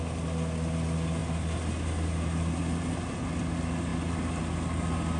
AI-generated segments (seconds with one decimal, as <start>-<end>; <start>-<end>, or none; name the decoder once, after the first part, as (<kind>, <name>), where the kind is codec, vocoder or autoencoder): none